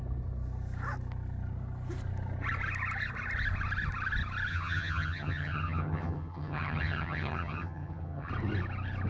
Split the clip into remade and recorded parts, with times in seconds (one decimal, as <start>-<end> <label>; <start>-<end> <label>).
0.0-4.5 recorded; 4.5-8.3 remade; 8.3-9.1 recorded